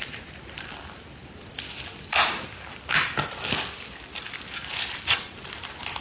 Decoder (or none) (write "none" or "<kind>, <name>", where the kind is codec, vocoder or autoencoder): none